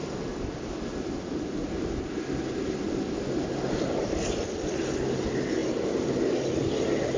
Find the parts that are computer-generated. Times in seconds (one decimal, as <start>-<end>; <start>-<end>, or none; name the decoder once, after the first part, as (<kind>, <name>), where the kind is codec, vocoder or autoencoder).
none